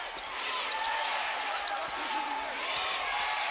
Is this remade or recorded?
remade